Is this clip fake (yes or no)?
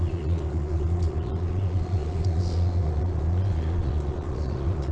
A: yes